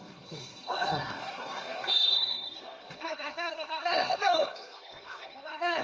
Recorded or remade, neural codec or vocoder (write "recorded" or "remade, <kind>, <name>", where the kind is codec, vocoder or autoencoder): remade, codec, SNAC